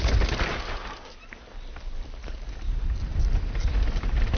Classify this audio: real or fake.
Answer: real